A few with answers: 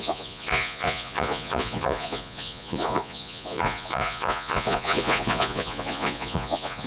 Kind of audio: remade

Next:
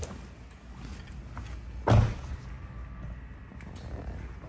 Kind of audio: recorded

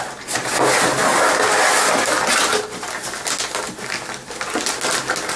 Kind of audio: recorded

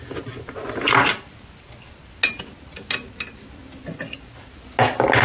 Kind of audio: recorded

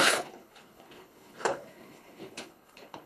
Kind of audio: remade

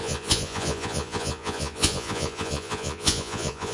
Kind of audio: remade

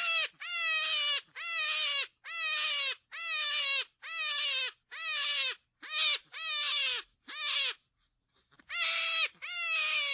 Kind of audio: recorded